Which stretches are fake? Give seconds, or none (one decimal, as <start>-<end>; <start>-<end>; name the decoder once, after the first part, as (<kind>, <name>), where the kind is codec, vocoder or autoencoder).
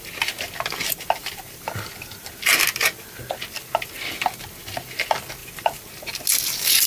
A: 1.2-1.9 (vocoder, BigVGAN v2); 5.4-5.9